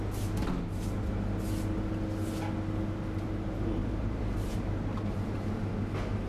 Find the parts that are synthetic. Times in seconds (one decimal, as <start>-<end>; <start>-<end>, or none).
3.8-5.5